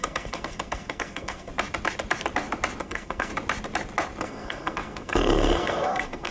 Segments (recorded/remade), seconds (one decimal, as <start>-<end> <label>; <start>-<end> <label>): 0.0-1.5 remade; 1.5-2.8 recorded; 2.8-3.3 remade; 3.3-4.2 recorded; 4.2-6.3 remade